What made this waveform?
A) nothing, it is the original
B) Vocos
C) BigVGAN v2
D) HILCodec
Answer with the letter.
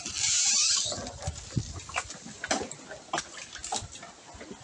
A